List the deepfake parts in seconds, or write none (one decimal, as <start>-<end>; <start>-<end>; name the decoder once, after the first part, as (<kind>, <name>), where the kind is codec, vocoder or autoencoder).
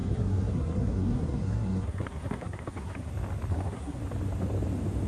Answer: 0.0-3.1 (codec, SNAC); 3.5-4.0